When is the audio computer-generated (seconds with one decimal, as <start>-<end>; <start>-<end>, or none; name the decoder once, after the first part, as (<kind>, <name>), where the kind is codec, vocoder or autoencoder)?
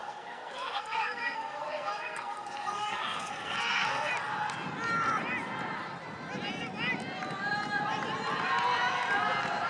0.0-4.1 (codec, SNAC)